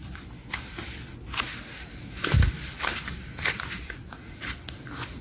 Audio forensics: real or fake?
real